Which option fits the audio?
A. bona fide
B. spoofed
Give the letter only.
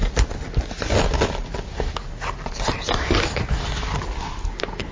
A